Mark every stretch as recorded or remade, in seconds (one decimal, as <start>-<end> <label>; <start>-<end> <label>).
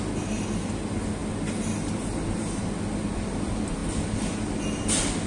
0.0-5.3 recorded